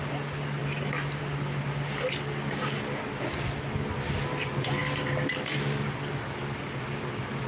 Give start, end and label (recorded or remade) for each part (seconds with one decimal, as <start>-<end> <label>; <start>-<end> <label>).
0.0-7.5 recorded